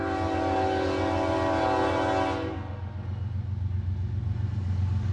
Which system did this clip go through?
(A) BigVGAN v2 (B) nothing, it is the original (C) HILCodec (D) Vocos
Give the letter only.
B